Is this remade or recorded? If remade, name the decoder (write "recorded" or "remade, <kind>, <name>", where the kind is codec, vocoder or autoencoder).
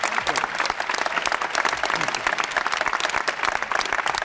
recorded